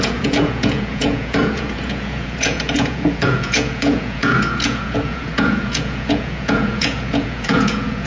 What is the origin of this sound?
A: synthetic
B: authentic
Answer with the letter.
A